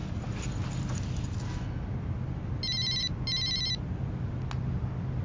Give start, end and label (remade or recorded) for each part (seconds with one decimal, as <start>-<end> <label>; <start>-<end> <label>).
0.0-5.2 recorded